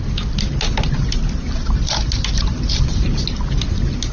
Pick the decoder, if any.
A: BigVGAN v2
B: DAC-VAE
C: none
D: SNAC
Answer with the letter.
C